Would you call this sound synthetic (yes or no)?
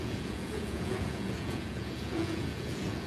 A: yes